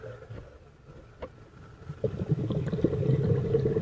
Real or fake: real